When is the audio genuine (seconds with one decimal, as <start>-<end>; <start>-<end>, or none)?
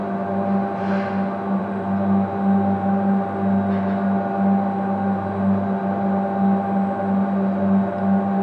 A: 0.0-8.4